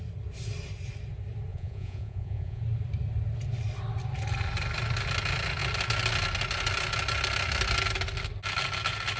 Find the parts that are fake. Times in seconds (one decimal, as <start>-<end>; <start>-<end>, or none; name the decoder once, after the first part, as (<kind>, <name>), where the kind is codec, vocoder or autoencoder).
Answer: 1.5-2.6 (vocoder, Vocos)